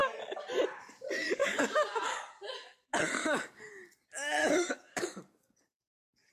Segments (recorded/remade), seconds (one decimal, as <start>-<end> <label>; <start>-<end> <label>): 0.0-1.4 recorded; 1.4-2.3 remade; 2.3-3.2 recorded; 3.2-3.7 remade; 3.7-4.4 recorded; 4.4-6.3 remade